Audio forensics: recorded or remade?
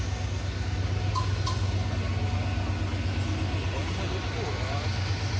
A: recorded